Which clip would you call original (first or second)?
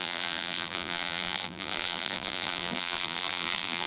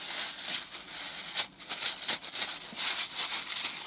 second